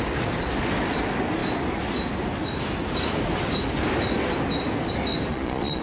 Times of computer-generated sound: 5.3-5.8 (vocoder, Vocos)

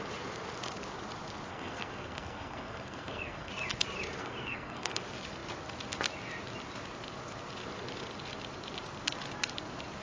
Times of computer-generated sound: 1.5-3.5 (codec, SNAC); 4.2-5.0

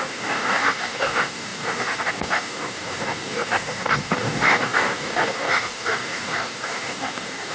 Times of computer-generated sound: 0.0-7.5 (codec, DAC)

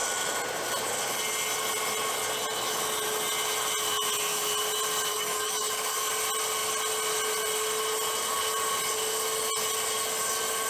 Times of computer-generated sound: 5.1-6.1 (codec, DAC)